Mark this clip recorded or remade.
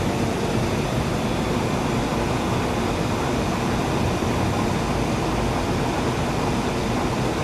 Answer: recorded